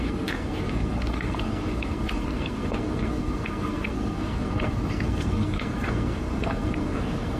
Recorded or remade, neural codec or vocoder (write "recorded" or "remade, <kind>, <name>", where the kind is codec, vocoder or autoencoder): remade, codec, SNAC